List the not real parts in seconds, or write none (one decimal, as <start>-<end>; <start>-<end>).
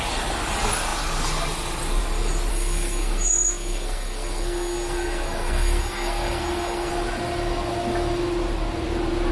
2.5-6.9